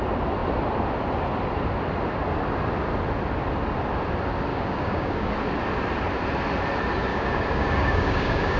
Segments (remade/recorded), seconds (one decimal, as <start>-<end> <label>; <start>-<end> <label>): 0.0-4.5 recorded; 4.5-5.3 remade; 5.3-7.1 recorded; 7.1-8.6 remade